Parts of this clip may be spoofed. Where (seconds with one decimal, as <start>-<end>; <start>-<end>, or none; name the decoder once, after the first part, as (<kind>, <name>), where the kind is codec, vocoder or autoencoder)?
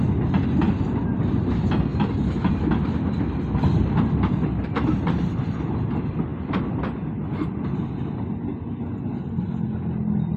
none